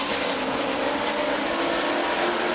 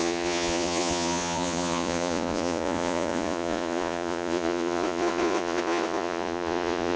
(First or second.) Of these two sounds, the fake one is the second